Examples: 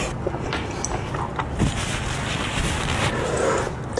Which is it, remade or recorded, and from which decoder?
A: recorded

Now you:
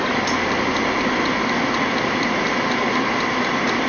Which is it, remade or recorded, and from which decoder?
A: recorded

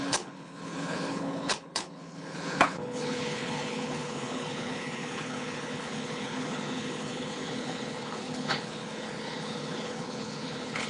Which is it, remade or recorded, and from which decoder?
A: remade, codec, HILCodec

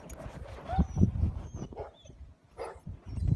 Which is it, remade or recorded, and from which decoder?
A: recorded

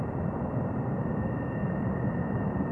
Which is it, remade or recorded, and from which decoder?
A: recorded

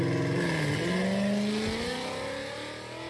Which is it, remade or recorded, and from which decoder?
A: recorded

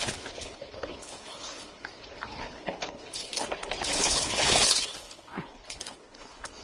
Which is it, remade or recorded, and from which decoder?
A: remade, codec, HILCodec